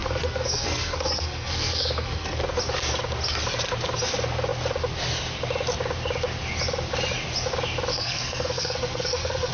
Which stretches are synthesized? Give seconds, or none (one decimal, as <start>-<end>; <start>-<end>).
0.0-2.4; 7.9-9.5